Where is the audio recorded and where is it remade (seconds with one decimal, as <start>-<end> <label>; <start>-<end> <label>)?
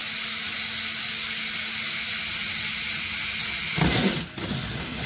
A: 0.0-5.1 recorded